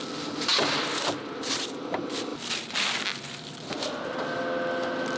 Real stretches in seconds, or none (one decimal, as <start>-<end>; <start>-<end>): 0.0-5.2